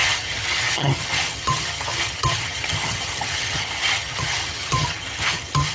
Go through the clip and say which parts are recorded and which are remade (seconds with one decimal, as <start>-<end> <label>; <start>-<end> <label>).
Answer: 0.0-5.7 remade